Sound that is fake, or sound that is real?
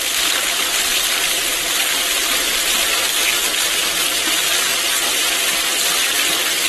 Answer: real